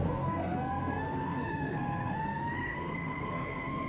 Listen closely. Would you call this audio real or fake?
fake